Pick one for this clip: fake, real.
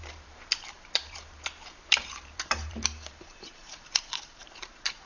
fake